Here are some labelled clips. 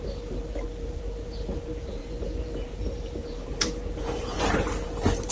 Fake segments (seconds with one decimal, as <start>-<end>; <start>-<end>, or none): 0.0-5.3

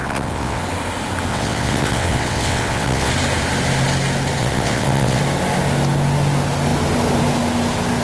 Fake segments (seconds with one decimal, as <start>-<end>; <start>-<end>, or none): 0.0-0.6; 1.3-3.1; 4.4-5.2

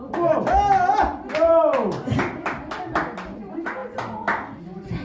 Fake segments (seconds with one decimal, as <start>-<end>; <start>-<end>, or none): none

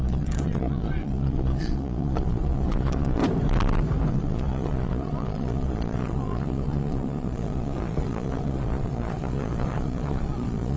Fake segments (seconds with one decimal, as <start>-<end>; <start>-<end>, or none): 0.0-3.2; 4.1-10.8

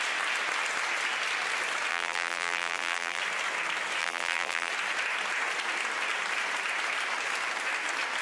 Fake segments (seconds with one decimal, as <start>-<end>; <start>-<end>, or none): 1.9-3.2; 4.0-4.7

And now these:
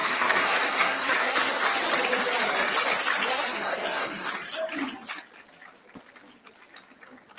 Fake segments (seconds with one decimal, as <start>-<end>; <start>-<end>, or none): 0.0-1.5; 3.3-4.3